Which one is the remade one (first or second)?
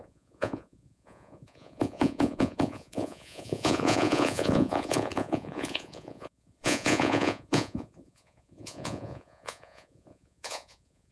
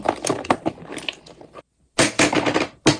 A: first